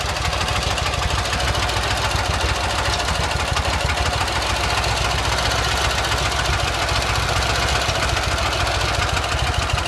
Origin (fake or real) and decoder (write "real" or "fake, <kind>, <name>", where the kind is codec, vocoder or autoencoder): real